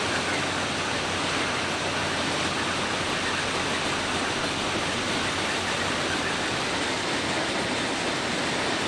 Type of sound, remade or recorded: recorded